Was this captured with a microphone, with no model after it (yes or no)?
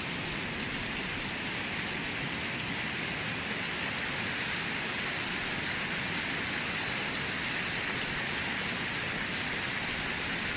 yes